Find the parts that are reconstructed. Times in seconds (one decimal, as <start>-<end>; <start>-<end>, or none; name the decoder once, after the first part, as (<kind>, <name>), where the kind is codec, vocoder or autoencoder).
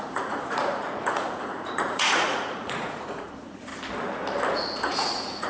0.0-3.7 (vocoder, Vocos); 4.5-5.5